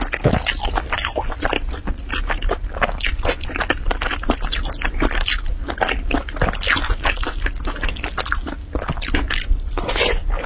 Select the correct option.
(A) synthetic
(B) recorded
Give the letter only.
B